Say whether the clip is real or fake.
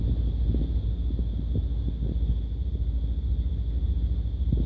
real